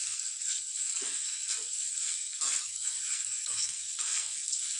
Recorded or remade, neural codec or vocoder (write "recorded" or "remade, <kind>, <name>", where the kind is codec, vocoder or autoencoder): remade, codec, SNAC